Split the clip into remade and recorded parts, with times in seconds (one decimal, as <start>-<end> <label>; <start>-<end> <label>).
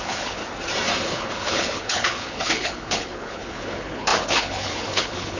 0.0-0.4 remade; 0.4-1.0 recorded; 1.0-5.4 remade